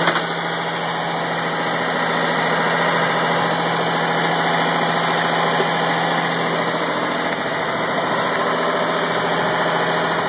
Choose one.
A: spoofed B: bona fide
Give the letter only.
B